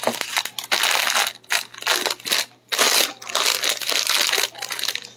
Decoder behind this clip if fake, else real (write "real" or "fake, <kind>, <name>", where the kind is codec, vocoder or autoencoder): real